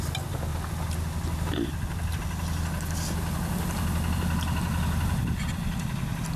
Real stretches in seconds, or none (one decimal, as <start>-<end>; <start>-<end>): 0.0-6.4